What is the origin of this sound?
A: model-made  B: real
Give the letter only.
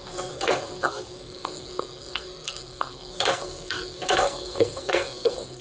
A